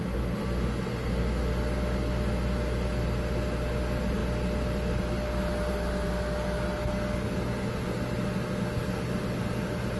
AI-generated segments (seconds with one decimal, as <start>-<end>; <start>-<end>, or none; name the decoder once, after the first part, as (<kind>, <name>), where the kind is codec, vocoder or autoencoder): none